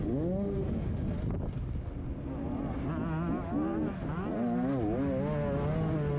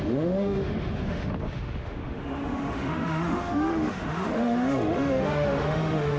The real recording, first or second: first